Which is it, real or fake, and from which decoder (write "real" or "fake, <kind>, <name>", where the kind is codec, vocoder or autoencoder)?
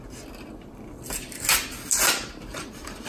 real